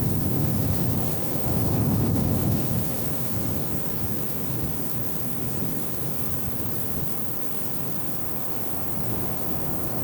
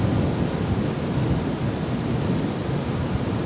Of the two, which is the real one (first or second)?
second